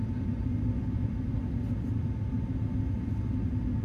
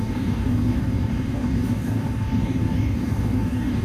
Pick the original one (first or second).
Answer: first